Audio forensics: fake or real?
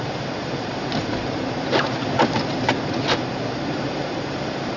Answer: fake